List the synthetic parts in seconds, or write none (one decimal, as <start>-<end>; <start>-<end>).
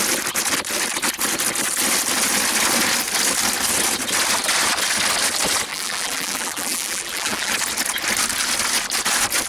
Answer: 5.7-7.5